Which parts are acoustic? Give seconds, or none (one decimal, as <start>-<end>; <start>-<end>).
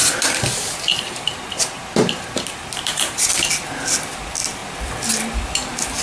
3.3-6.0